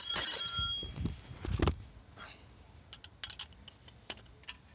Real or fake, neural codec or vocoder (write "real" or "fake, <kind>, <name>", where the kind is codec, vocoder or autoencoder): real